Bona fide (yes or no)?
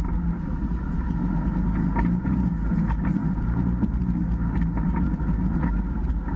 yes